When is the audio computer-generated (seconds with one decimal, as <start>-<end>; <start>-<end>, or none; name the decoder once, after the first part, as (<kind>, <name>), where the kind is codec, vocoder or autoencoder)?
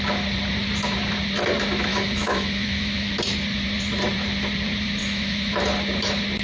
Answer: 1.9-3.1 (autoencoder, DAC-VAE); 5.0-5.6